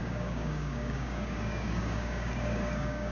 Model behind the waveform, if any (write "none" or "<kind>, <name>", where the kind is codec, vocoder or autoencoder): codec, DAC